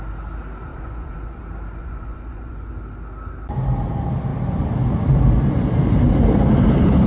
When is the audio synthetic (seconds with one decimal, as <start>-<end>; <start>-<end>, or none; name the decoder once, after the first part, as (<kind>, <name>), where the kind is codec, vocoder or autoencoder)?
0.7-1.4 (vocoder, Vocos); 1.8-2.7